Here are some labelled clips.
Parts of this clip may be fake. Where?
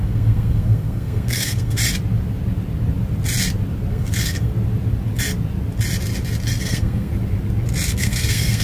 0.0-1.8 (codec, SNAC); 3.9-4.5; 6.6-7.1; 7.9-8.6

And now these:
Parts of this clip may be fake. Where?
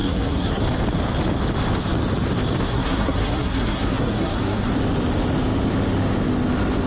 0.0-0.6 (codec, SNAC); 2.7-4.7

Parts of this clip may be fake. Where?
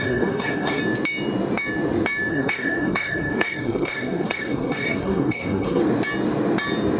0.0-0.8 (codec, SNAC); 2.3-5.8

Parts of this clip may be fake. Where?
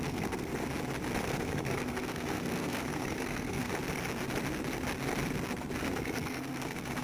0.0-0.5 (codec, SNAC); 1.2-3.7; 5.8-7.0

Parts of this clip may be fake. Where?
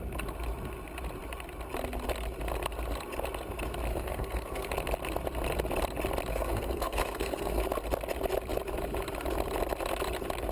3.9-4.7 (codec, SNAC); 6.3-7.6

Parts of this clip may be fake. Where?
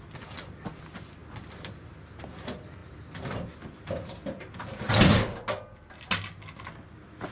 none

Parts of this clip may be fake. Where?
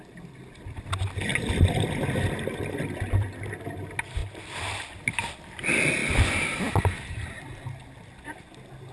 none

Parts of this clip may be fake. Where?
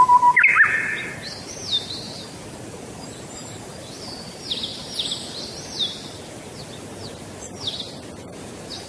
none